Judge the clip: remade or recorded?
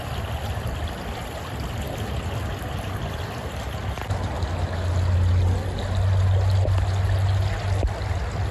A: recorded